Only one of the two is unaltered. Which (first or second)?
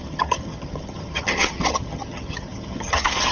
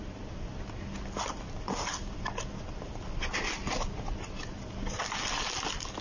second